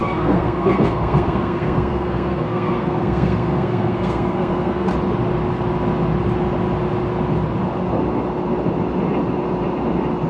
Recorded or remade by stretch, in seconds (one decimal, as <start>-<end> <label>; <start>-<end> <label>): 0.0-4.9 remade; 4.9-10.3 recorded